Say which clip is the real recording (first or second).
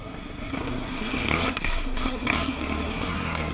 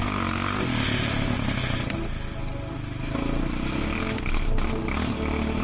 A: second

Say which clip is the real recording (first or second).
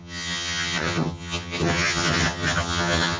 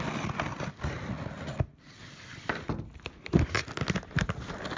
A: second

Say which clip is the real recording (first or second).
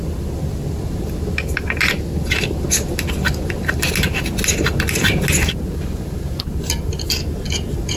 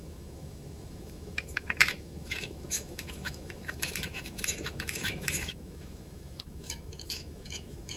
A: first